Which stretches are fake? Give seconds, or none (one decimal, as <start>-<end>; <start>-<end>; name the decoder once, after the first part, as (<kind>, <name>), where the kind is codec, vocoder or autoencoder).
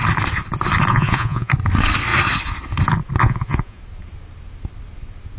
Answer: 0.9-1.5 (vocoder, Vocos); 3.2-3.8